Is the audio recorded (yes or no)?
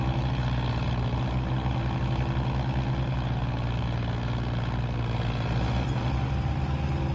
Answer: yes